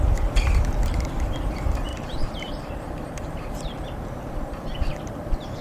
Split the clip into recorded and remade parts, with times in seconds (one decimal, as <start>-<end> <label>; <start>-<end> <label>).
0.0-1.9 recorded; 1.9-5.6 remade